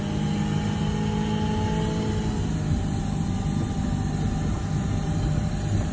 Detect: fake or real real